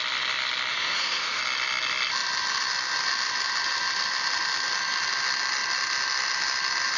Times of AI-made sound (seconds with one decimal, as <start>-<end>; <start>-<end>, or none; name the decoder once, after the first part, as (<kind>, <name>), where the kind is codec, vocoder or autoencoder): 0.7-1.4 (autoencoder, DAC-VAE)